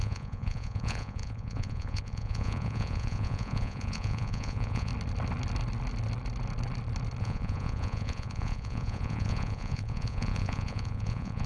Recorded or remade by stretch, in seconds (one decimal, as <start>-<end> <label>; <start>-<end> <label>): 0.0-4.9 remade; 4.9-7.2 recorded; 7.2-11.5 remade